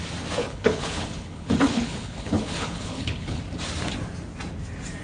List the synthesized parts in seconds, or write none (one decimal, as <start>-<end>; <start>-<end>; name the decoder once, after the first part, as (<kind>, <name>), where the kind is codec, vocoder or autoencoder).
0.4-3.4 (codec, HILCodec)